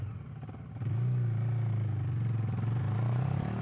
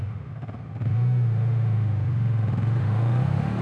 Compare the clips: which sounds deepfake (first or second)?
second